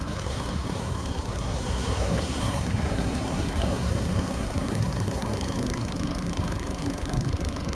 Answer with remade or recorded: remade